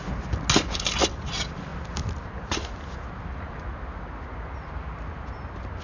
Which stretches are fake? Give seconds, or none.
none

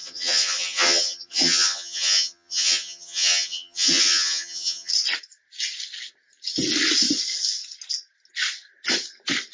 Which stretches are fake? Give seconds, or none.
0.0-4.9 (vocoder, HiFi-GAN)

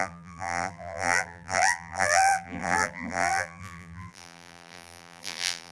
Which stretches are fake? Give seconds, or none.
0.0-5.7 (vocoder, BigVGAN v2)

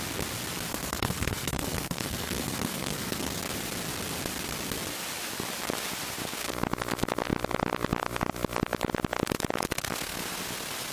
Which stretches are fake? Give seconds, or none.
0.7-3.4 (codec, SNAC)